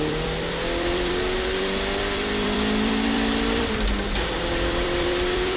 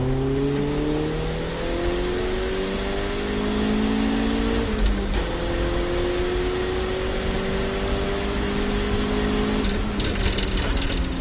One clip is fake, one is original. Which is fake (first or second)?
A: first